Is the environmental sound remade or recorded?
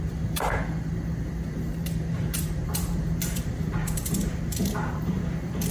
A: remade